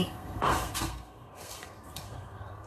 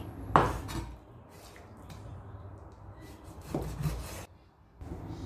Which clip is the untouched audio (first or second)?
second